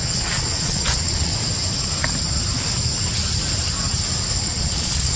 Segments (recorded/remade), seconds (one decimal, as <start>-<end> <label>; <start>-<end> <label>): 0.0-1.3 remade; 1.3-4.4 recorded; 4.4-5.2 remade